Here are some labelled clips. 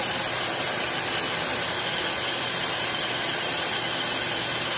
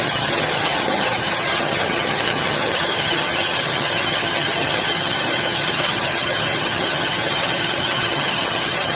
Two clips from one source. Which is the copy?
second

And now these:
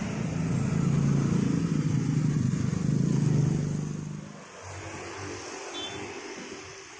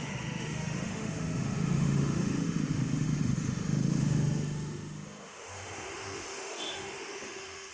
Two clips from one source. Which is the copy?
second